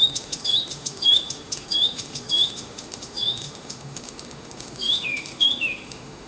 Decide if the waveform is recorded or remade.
remade